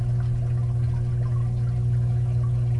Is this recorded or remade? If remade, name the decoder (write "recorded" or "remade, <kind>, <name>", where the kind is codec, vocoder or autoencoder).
recorded